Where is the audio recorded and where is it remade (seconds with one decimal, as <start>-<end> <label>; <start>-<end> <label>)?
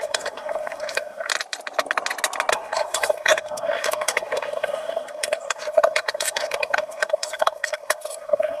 0.0-1.3 remade; 1.3-2.5 recorded; 2.5-8.6 remade